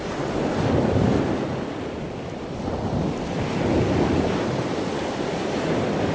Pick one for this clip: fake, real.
real